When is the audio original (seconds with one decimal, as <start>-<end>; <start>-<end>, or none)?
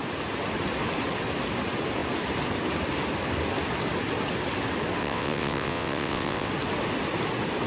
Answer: 0.0-5.0; 6.5-7.7